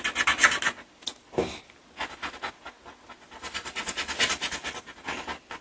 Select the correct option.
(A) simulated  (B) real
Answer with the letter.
B